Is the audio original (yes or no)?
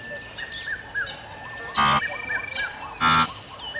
yes